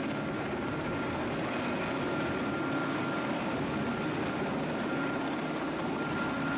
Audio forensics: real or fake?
real